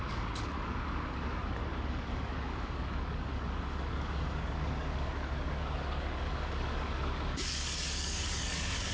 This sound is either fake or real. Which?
fake